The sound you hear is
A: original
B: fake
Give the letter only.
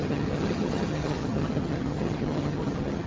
B